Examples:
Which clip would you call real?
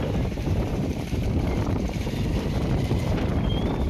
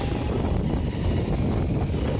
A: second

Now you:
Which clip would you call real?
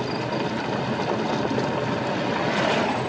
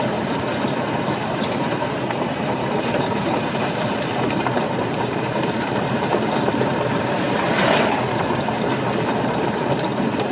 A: first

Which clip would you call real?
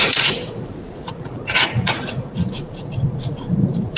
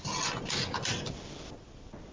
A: second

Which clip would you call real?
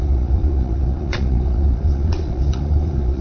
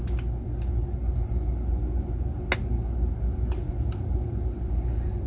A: second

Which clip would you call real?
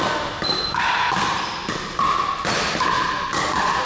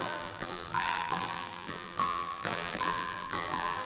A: first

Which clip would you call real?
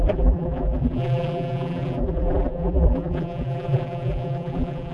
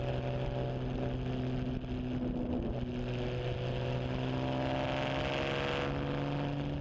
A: second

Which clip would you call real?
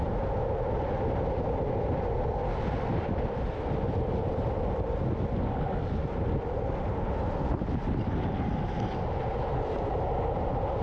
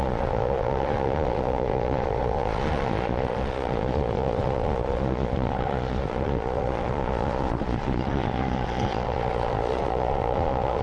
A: first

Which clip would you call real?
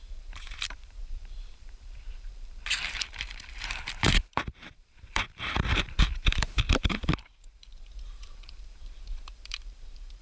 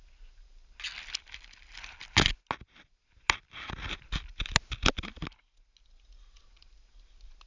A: second